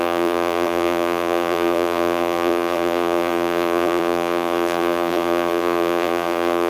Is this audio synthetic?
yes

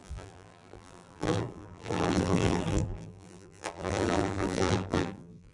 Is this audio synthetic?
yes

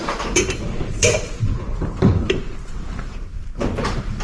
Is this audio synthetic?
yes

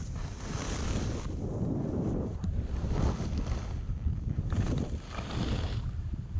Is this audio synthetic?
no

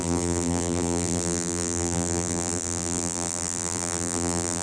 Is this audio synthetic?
yes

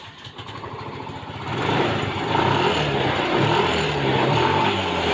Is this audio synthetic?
yes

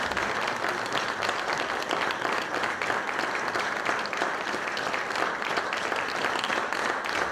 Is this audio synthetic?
no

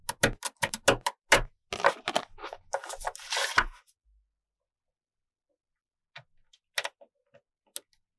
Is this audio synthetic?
no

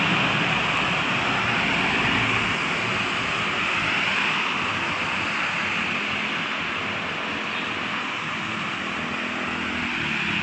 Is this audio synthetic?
no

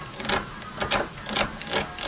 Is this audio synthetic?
yes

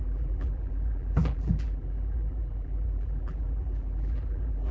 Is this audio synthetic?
yes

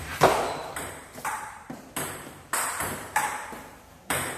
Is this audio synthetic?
yes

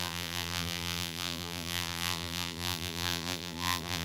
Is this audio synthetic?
yes